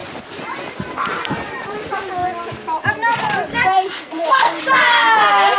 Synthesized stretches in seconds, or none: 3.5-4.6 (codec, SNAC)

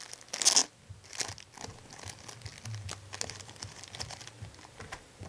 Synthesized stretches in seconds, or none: none

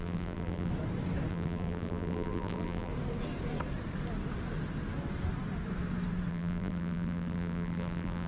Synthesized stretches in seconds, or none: 0.0-0.7 (vocoder, BigVGAN v2); 1.3-2.9; 6.3-8.3

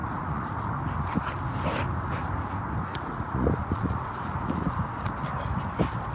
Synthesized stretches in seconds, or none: 0.0-0.8 (vocoder, Vocos); 2.8-5.1

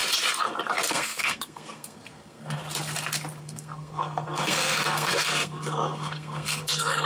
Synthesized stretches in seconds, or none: 0.9-2.6 (codec, SNAC); 3.4-7.1